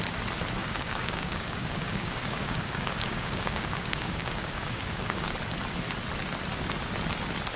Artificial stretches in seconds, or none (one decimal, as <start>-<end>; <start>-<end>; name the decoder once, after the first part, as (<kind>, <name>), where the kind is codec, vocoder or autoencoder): 0.6-5.2 (codec, DAC)